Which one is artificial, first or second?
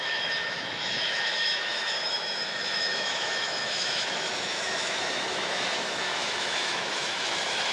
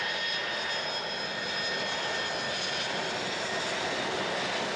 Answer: first